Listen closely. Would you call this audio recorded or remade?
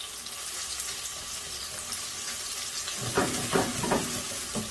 recorded